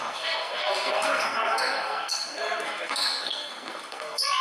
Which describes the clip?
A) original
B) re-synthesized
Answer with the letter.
B